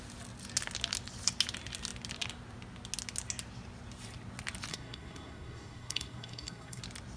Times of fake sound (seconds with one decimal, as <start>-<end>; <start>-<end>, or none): 4.7-6.8